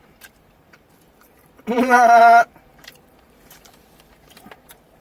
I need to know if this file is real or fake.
fake